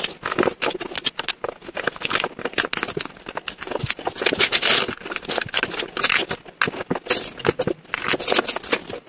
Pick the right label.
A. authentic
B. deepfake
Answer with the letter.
A